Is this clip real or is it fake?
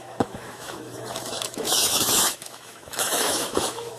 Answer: fake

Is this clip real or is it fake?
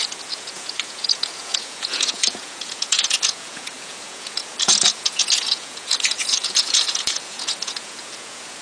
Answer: fake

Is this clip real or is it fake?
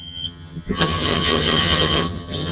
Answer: fake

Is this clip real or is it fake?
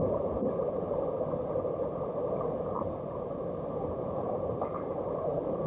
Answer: real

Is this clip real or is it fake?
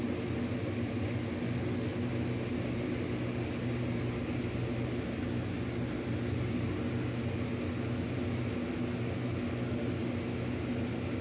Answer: real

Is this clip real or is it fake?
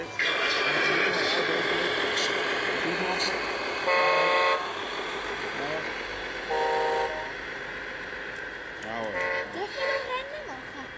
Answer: real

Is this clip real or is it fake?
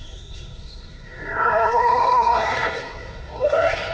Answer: fake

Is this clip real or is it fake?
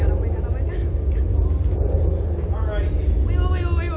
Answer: real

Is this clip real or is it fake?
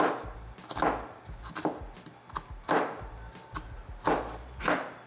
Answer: real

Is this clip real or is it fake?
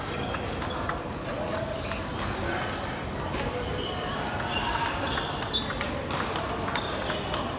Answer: real